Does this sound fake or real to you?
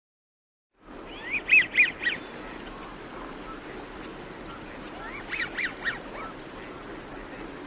real